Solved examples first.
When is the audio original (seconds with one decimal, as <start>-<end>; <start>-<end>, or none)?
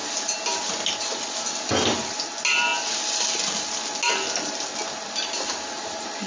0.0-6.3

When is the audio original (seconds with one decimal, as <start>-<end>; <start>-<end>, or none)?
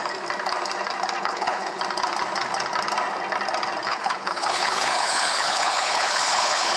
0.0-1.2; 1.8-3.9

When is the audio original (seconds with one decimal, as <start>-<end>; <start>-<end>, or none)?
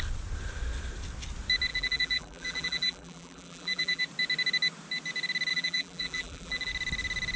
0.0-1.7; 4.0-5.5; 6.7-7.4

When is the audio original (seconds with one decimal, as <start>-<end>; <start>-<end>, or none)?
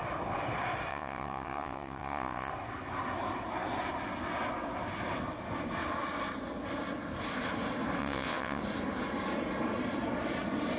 0.0-0.9; 2.5-8.0; 8.6-10.8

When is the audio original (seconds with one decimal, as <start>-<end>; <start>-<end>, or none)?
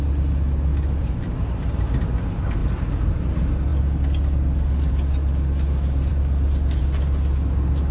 0.0-0.7; 1.9-2.6; 3.2-7.9